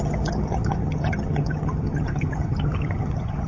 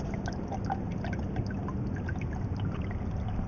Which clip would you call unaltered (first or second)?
second